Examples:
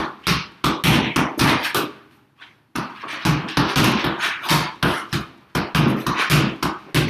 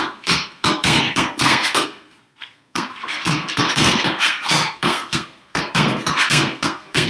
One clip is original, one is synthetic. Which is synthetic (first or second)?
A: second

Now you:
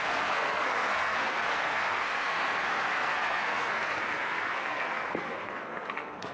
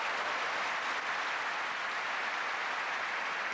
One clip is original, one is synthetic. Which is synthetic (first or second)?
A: first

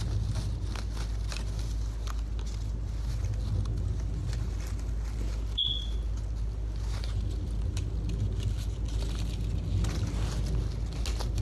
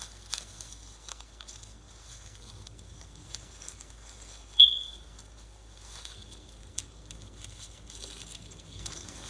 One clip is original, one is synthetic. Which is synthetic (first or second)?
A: second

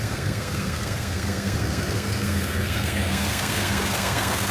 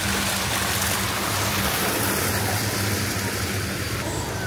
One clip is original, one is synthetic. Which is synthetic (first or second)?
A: first